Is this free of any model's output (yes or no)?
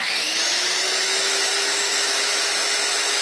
no